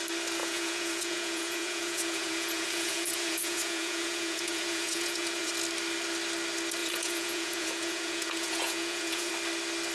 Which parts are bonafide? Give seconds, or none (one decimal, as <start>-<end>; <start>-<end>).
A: 0.0-0.4; 5.5-6.8; 9.3-9.9